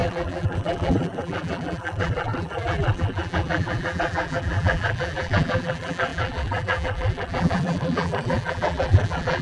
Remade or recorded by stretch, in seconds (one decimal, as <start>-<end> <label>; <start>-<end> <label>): 0.0-9.4 remade